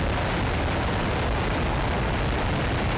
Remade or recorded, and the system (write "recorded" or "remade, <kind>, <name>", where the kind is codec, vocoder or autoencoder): recorded